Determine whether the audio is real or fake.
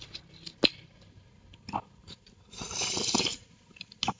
real